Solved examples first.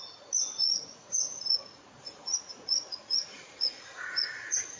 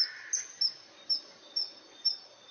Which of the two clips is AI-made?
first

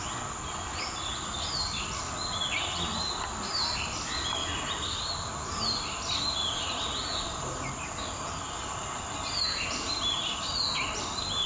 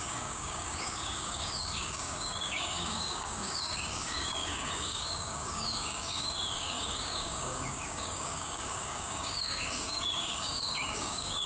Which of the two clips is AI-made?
second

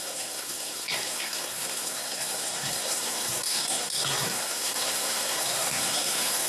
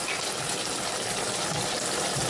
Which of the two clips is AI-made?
first